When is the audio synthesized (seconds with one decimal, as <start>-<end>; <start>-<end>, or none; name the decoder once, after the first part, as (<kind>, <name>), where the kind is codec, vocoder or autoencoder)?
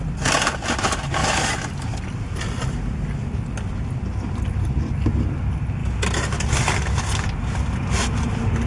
none